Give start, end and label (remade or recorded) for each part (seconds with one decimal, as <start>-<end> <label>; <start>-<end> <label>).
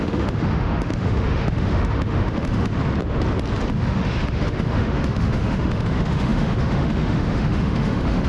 0.0-2.7 remade; 2.7-3.7 recorded; 3.7-8.3 remade